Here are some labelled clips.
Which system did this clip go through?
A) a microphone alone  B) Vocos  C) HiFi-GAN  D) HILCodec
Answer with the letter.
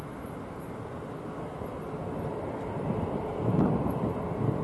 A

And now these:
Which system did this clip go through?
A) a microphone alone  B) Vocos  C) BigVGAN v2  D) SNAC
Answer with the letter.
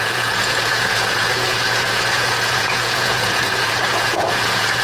B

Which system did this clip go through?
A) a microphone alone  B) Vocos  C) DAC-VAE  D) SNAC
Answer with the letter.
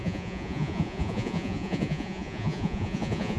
B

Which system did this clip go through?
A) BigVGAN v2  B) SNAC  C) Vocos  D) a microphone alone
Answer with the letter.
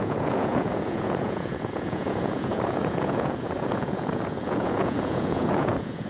C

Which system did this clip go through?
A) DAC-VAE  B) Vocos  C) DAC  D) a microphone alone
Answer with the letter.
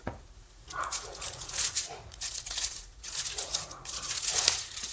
B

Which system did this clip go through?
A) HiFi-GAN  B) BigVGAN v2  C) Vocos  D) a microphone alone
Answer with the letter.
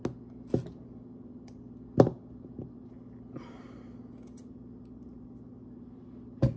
D